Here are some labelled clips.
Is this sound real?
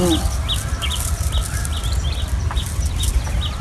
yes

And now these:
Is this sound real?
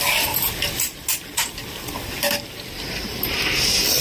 yes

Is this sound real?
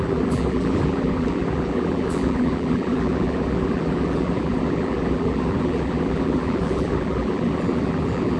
no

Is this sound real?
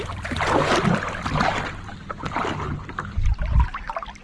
yes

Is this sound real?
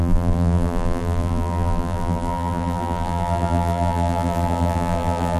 no